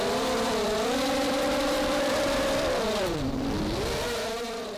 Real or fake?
fake